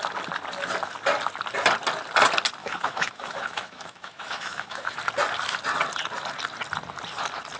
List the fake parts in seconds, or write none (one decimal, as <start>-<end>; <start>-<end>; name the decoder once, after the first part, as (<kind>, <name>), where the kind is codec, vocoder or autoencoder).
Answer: 2.6-5.0 (autoencoder, DAC-VAE)